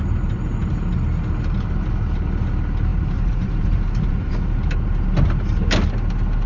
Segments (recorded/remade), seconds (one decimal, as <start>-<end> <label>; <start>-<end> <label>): 0.0-2.9 recorded; 2.9-4.3 remade; 4.3-6.5 recorded